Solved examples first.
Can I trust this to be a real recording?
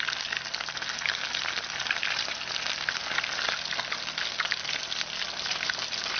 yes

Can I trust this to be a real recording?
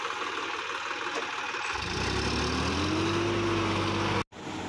yes